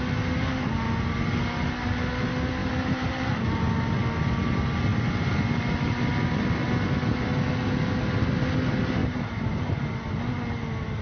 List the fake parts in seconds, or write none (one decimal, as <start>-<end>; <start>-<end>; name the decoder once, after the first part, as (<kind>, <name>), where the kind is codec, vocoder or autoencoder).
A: 2.6-3.3 (vocoder, BigVGAN v2); 9.0-9.8